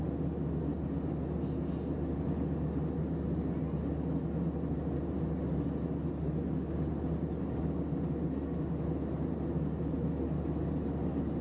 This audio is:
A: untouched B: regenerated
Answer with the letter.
A